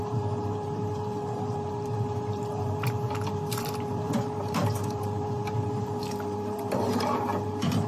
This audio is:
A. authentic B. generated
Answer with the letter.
B